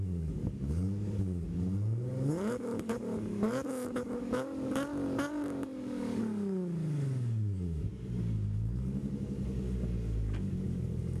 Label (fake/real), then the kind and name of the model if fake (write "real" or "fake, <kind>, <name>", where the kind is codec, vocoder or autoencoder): fake, codec, DAC